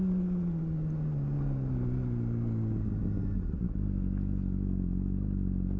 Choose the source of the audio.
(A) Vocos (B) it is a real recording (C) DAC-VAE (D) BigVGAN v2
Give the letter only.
B